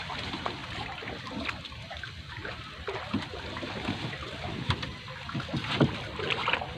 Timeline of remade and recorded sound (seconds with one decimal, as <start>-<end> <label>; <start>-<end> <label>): 0.0-2.4 recorded; 2.4-3.1 remade; 3.1-6.8 recorded